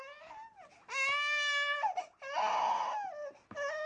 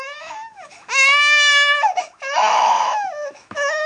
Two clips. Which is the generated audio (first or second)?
second